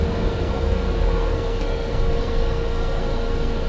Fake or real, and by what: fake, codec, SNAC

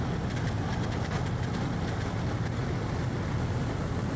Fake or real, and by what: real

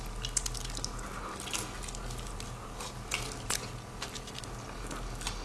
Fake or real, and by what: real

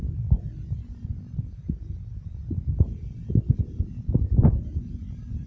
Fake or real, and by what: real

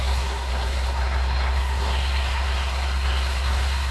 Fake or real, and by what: fake, codec, SNAC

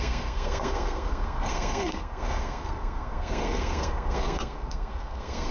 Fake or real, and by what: fake, codec, SNAC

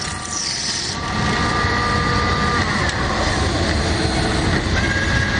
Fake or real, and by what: real